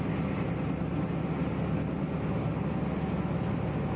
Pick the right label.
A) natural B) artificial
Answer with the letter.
A